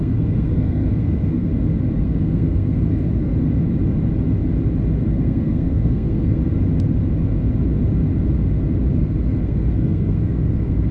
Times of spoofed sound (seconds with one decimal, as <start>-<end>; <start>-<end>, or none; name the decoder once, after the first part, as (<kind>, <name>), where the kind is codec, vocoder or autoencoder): 0.0-1.5 (codec, SNAC); 2.0-3.3; 5.1-6.4; 8.9-10.9